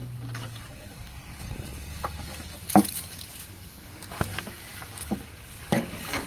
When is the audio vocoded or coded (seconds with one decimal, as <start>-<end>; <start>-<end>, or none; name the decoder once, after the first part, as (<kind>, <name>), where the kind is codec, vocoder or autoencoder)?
0.0-6.3 (codec, DAC)